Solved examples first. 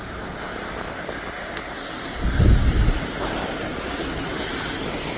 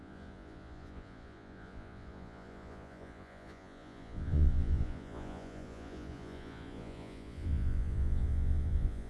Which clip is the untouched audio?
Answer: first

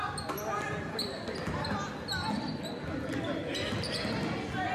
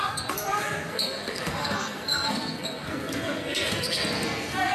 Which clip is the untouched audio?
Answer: first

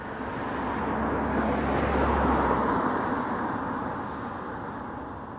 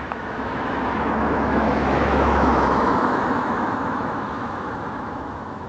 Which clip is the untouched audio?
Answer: first